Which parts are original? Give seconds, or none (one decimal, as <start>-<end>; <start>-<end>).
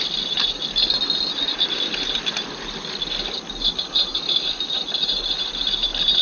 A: 0.0-6.2